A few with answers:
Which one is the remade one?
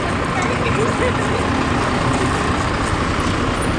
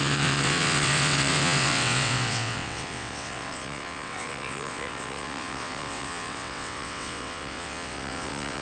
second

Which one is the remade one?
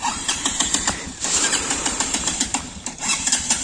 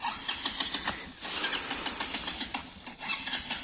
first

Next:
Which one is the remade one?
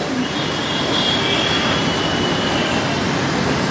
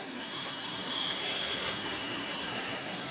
second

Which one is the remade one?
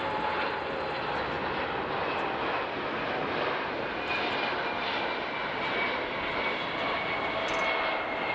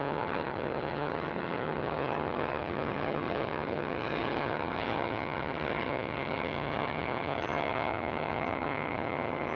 second